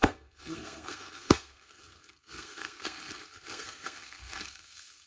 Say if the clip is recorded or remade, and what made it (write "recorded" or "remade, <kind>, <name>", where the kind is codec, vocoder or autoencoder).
remade, codec, SNAC